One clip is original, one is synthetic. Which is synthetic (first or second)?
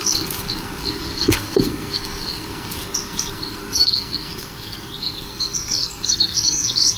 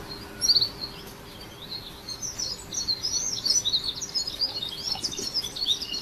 first